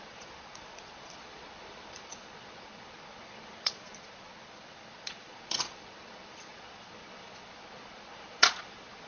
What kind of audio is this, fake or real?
fake